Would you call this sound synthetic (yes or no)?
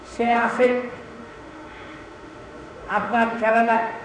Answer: yes